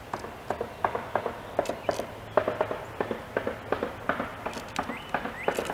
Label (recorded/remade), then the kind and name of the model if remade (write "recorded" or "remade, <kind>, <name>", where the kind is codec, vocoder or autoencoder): recorded